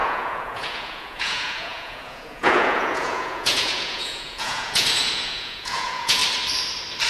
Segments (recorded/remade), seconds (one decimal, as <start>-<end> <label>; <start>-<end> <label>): 0.0-6.2 remade; 6.2-7.1 recorded